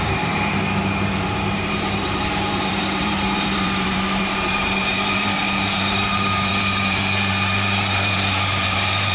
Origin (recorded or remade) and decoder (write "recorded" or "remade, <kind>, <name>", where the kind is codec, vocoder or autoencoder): remade, vocoder, BigVGAN v2